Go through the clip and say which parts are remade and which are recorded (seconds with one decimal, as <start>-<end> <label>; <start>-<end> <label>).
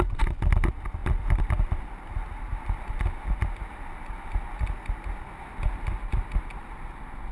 0.0-7.3 recorded